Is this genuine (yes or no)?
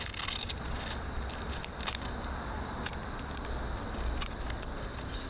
yes